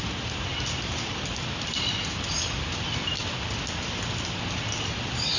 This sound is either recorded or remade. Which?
recorded